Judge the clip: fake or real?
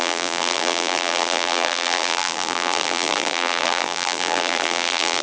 fake